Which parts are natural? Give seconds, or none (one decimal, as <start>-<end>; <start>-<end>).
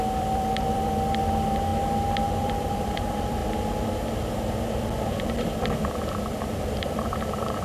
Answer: 1.7-2.4; 3.4-6.7